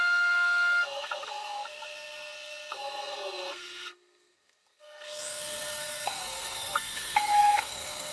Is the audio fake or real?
fake